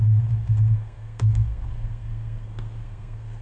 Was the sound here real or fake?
fake